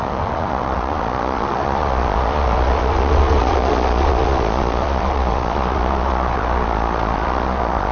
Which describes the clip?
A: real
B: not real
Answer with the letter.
B